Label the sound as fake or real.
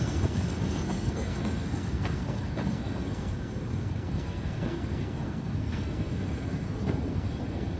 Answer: fake